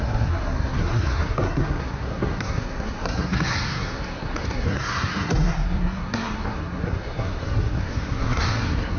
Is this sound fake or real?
fake